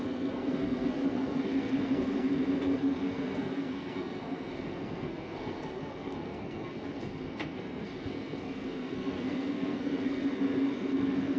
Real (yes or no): no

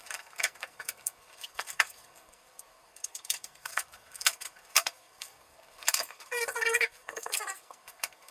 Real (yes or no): no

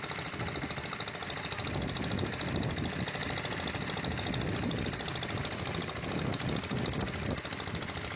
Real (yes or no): yes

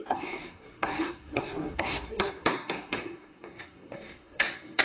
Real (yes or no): no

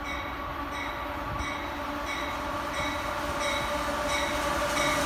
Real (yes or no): yes